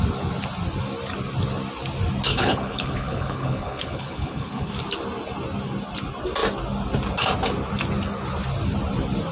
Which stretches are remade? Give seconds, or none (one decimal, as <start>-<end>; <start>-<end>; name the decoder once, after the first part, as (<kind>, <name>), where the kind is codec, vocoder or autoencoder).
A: 2.3-4.7 (codec, HILCodec)